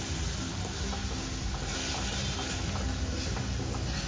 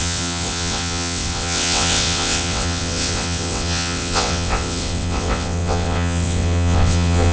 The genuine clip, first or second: first